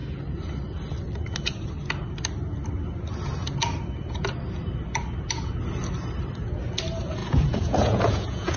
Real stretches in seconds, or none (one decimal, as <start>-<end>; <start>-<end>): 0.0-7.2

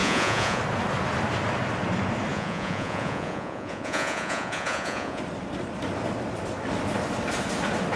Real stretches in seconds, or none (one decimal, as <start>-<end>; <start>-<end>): 0.6-2.3; 5.2-8.0

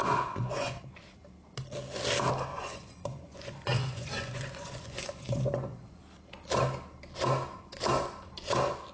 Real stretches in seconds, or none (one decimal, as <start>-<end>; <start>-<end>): 0.8-2.5; 6.0-8.9

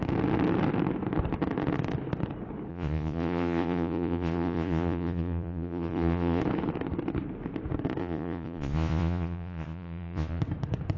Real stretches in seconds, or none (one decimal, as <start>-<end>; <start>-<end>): 0.0-2.7; 6.4-8.0; 10.4-11.0

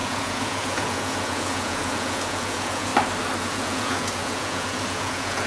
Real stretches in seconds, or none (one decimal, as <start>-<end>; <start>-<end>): 2.9-3.4

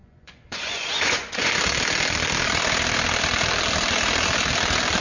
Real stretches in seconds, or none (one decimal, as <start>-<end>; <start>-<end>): 1.5-5.0